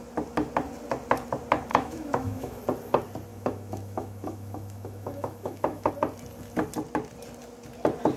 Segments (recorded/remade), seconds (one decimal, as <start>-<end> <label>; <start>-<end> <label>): 0.0-1.7 recorded; 1.7-2.6 remade; 2.6-3.3 recorded; 3.3-5.9 remade; 5.9-8.2 recorded